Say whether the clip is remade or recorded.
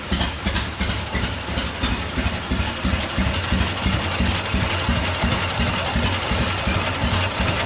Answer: recorded